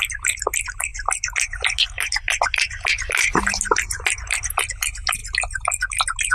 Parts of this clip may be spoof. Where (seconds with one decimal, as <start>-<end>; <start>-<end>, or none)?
none